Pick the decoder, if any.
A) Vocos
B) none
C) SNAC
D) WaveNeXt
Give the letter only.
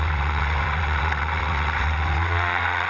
D